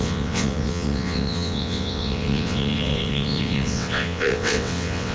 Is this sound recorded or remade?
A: remade